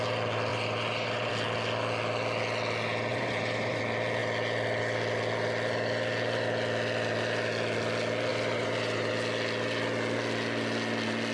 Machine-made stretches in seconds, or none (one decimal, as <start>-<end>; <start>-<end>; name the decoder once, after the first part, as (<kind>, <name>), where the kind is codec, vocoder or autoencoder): 0.5-1.3 (vocoder, BigVGAN v2); 3.1-3.8; 8.3-9.1